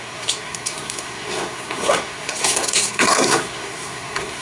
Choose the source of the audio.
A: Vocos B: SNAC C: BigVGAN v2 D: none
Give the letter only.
B